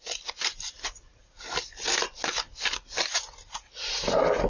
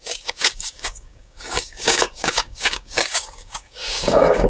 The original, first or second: first